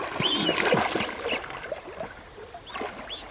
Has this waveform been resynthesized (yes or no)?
no